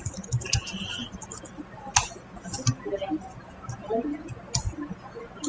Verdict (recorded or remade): recorded